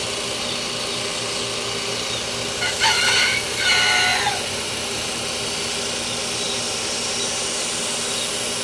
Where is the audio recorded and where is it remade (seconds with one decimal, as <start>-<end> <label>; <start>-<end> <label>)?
0.0-4.1 recorded; 4.1-4.7 remade; 4.7-8.6 recorded